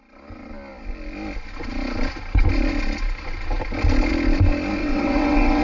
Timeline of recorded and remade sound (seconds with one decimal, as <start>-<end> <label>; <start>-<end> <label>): 0.0-4.8 recorded; 4.8-5.6 remade